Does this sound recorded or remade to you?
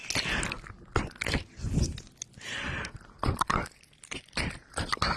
recorded